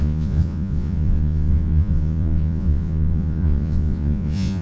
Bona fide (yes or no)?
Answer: no